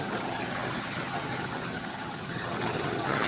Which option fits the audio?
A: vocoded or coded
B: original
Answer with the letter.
A